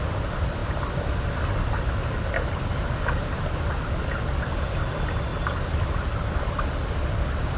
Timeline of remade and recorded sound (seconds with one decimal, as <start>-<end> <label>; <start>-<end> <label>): 0.0-7.6 recorded